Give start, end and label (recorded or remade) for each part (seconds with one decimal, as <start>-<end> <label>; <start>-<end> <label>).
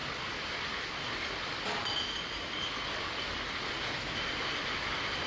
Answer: 0.0-5.3 recorded